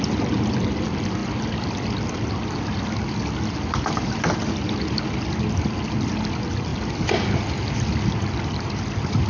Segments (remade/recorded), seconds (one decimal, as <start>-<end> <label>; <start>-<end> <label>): 0.0-9.3 recorded